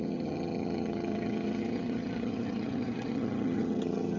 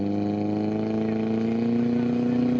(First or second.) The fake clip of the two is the first